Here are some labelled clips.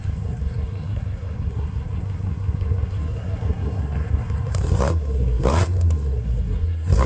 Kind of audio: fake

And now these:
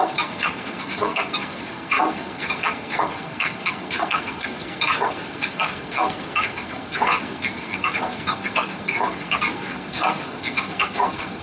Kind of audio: fake